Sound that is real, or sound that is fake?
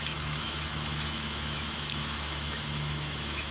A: fake